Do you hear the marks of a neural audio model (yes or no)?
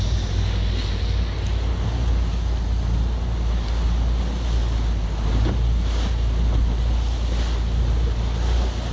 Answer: no